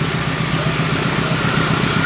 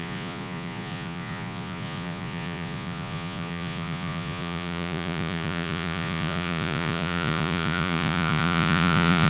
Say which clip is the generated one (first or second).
second